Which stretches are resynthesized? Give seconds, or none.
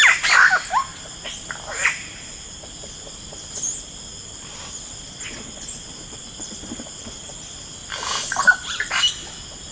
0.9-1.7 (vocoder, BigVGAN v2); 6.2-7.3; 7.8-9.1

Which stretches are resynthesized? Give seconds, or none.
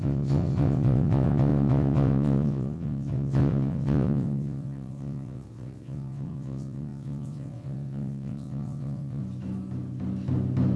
0.0-9.2 (vocoder, WaveNeXt)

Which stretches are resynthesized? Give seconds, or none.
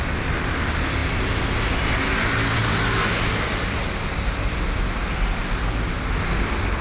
none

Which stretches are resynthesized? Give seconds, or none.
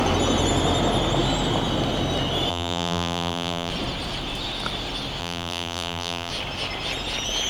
2.5-3.7 (vocoder, BigVGAN v2); 5.2-6.3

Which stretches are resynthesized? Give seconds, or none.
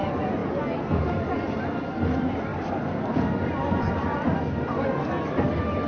none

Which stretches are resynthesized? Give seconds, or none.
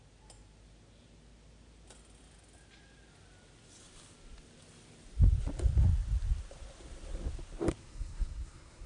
7.8-8.9 (codec, SNAC)